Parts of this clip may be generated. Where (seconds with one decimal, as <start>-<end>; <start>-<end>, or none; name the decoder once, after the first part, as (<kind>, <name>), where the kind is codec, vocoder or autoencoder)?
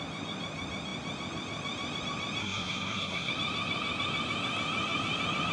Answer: 2.4-3.3 (codec, SNAC)